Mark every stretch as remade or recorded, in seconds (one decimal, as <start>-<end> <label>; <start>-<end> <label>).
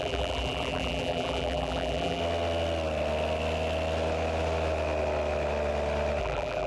0.0-2.2 remade; 2.2-6.2 recorded; 6.2-6.7 remade